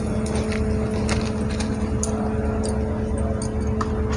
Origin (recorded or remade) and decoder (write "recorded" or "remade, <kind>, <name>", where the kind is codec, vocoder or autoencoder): recorded